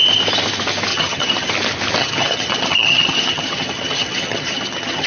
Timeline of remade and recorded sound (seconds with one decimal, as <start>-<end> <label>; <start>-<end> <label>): 0.0-0.9 recorded; 0.9-1.5 remade; 1.5-2.0 recorded; 2.0-5.1 remade